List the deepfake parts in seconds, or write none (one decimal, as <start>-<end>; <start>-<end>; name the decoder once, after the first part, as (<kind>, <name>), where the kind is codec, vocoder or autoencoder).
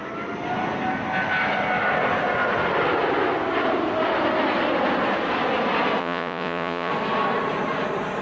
6.0-6.9 (vocoder, Vocos)